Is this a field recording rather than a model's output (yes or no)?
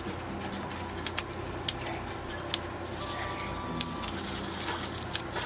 yes